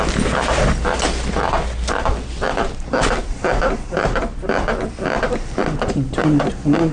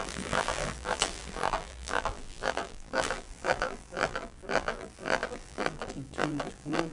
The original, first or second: first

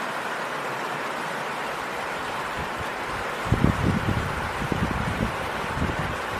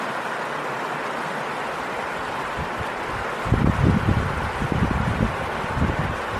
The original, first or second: second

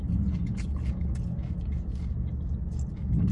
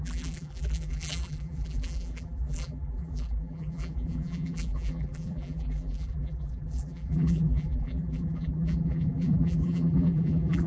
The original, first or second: first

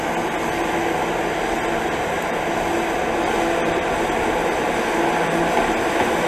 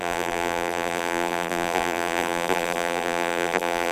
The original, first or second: first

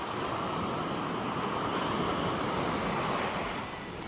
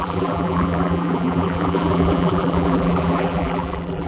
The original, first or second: first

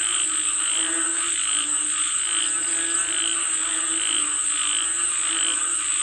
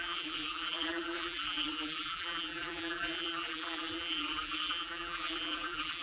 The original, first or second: first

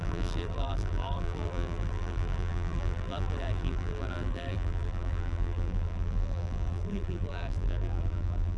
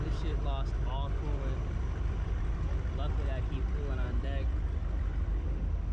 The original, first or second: second